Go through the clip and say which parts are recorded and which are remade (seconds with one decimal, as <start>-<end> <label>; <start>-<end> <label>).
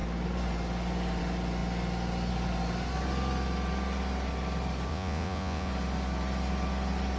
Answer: 0.0-4.9 recorded; 4.9-5.7 remade; 5.7-7.2 recorded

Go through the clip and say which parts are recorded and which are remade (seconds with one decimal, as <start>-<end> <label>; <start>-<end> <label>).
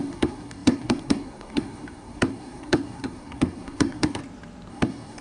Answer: 0.0-4.2 remade; 4.2-4.7 recorded; 4.7-5.2 remade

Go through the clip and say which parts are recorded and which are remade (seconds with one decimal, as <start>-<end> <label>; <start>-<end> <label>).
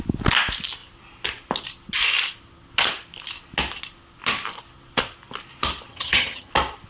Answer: 0.0-5.9 recorded; 5.9-6.5 remade; 6.5-6.9 recorded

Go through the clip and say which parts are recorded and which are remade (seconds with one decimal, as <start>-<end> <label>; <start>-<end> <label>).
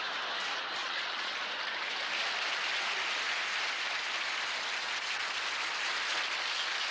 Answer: 0.0-0.8 recorded; 0.8-1.4 remade; 1.4-6.9 recorded